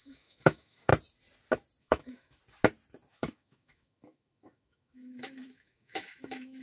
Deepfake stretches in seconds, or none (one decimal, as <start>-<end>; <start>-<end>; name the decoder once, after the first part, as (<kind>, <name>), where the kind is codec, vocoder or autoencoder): 0.0-0.9 (autoencoder, DAC-VAE); 1.8-2.4; 3.1-6.6